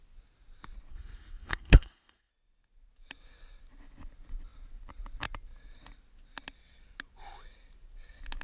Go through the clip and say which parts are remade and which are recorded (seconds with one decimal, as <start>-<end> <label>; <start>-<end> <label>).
0.0-0.9 recorded; 0.9-2.3 remade; 2.3-8.4 recorded